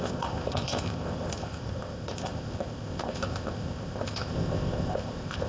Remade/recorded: remade